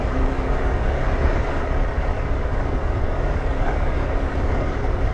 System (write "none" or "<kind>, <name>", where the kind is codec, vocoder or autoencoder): codec, DAC